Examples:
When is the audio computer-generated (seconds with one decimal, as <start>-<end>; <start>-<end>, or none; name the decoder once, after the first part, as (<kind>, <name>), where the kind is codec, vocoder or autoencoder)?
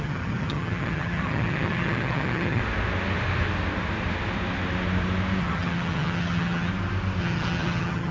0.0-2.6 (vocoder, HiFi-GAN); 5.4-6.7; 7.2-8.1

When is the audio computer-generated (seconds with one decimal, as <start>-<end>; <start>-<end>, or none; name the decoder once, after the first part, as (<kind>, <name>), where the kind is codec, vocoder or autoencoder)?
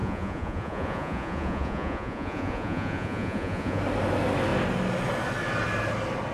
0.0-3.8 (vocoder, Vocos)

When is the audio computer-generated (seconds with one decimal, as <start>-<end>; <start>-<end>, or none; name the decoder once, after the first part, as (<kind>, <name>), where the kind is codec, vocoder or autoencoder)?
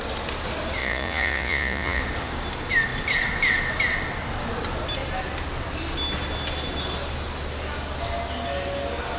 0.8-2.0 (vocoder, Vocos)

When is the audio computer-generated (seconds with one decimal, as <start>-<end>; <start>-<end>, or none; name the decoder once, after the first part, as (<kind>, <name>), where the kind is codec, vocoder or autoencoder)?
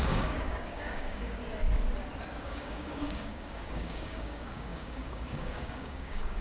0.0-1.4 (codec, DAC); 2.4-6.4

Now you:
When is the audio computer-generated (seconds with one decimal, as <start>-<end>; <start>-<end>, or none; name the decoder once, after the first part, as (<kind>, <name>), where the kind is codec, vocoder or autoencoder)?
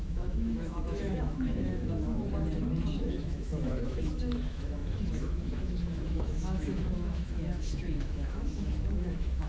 0.0-2.2 (autoencoder, DAC-VAE); 3.0-9.5